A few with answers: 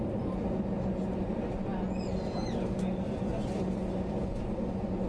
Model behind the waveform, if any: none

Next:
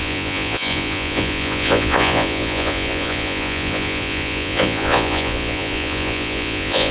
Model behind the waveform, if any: vocoder, Vocos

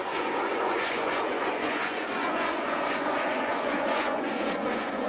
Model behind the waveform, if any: vocoder, Vocos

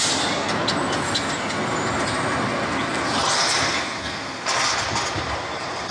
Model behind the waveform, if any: none